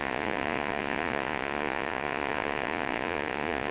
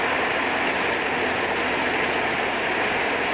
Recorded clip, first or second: second